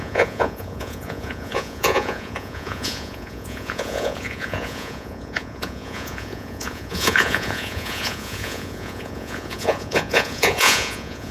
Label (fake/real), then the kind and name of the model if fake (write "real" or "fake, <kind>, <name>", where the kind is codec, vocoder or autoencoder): fake, vocoder, Vocos